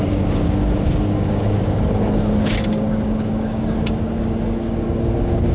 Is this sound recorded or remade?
remade